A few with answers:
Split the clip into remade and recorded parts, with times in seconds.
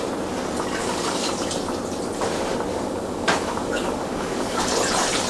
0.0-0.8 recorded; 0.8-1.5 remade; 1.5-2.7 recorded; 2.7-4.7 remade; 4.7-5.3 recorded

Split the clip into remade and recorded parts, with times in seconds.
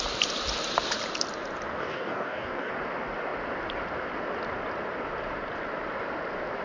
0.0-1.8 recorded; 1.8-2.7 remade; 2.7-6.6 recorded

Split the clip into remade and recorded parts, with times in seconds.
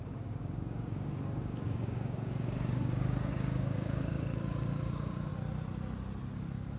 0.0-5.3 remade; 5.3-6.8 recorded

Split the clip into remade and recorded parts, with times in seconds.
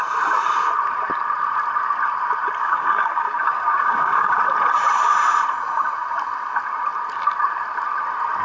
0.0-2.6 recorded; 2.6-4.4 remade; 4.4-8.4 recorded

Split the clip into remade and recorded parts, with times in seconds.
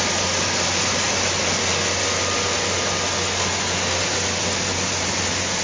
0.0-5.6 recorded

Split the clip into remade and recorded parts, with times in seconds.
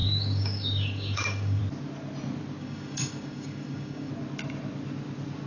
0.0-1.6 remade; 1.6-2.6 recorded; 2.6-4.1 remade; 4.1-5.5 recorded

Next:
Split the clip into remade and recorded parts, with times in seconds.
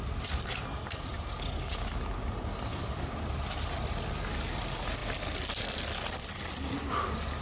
0.0-7.4 recorded